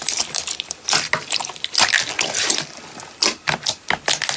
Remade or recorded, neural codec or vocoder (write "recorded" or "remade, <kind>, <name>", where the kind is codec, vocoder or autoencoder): recorded